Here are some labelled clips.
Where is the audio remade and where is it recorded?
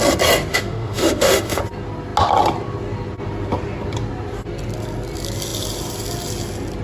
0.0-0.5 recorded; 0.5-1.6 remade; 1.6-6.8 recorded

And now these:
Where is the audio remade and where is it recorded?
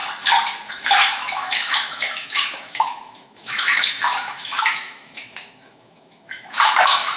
0.0-0.7 recorded; 0.7-7.2 remade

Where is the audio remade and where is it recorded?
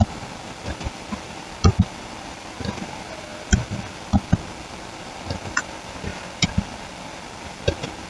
0.0-8.1 recorded